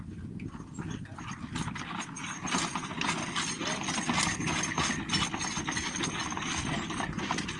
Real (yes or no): yes